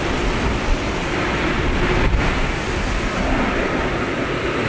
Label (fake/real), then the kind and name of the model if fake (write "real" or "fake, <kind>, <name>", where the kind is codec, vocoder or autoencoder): real